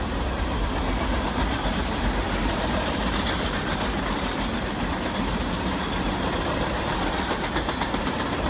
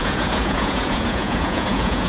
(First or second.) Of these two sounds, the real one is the first